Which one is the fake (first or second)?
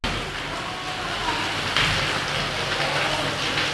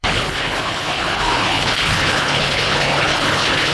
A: second